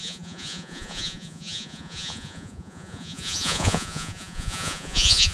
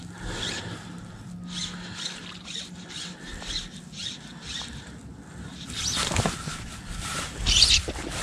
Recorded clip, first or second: second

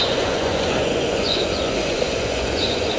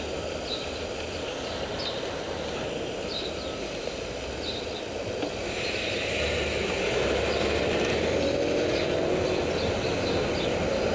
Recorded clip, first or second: second